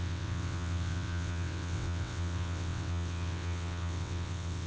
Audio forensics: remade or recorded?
remade